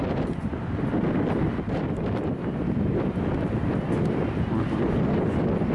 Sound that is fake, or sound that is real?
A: real